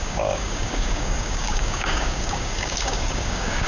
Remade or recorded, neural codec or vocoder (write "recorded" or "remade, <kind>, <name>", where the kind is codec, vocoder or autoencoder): remade, codec, DAC